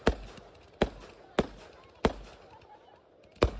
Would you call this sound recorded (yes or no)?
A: yes